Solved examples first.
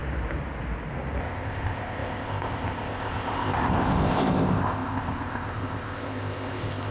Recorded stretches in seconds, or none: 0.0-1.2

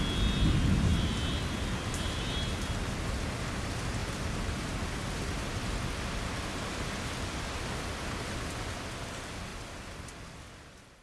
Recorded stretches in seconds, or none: 0.0-0.9; 2.9-9.5; 10.4-11.0

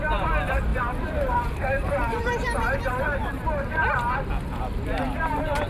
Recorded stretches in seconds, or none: 0.0-0.7; 4.1-5.7

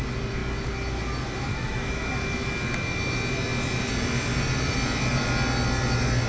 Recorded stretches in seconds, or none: 0.0-1.5; 2.1-6.3

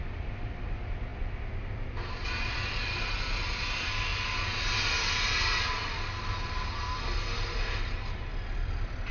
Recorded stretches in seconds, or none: 0.0-9.1

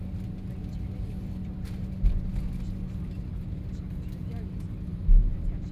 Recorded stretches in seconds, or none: 0.0-1.4; 1.9-5.7

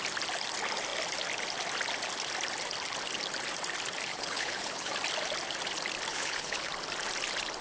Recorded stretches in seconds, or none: 0.0-4.1; 4.9-6.1; 6.7-7.6